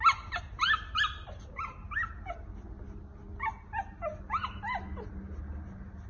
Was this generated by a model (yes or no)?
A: no